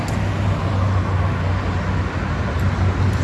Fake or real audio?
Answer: real